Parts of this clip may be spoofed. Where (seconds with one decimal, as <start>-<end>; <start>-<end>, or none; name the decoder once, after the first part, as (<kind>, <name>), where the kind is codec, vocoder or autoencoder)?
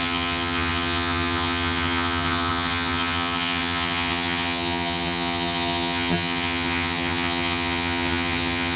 0.0-8.8 (vocoder, HiFi-GAN)